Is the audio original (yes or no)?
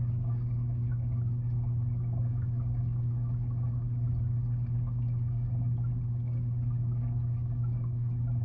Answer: no